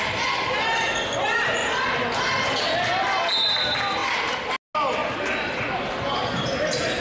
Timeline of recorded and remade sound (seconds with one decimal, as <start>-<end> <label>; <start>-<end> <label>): 0.0-5.0 recorded; 5.0-5.6 remade; 5.6-7.0 recorded